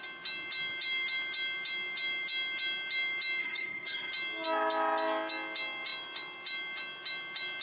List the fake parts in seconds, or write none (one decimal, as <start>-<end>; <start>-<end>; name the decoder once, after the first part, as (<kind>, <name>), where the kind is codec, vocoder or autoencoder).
3.4-4.1 (codec, HILCodec)